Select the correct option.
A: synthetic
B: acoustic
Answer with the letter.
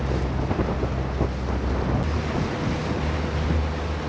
B